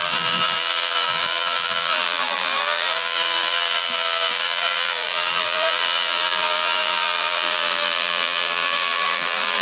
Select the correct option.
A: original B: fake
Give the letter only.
B